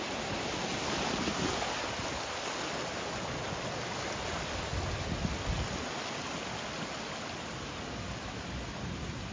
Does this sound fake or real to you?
real